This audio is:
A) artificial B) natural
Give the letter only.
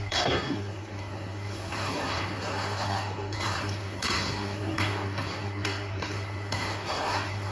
A